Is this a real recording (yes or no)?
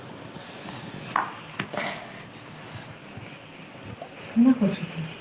yes